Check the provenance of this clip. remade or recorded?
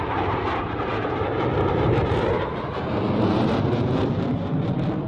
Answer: remade